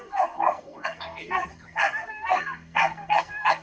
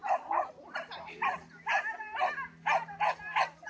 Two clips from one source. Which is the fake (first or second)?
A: first